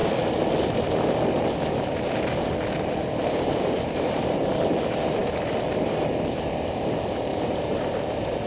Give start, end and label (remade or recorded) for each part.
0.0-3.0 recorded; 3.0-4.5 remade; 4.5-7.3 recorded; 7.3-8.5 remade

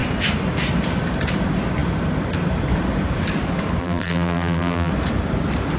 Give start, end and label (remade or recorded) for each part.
0.0-3.8 recorded; 3.8-4.9 remade; 4.9-5.8 recorded